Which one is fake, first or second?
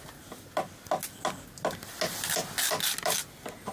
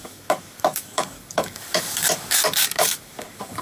second